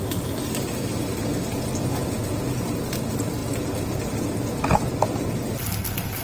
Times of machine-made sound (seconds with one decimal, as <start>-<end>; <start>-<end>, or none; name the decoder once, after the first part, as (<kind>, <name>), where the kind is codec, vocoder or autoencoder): 3.4-4.1 (vocoder, BigVGAN v2)